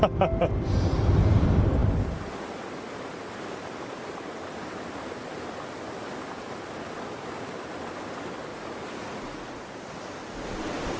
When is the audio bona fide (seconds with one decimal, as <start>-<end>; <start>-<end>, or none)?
0.0-8.5; 9.7-11.0